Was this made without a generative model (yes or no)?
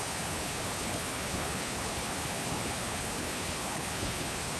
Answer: no